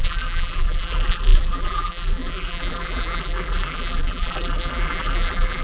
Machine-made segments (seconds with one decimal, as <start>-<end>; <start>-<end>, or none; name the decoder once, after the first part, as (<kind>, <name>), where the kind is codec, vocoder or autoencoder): 0.0-5.6 (vocoder, BigVGAN v2)